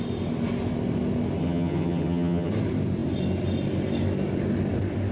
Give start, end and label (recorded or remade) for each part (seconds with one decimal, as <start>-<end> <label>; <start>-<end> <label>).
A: 0.0-1.4 recorded; 1.4-2.5 remade; 2.5-5.1 recorded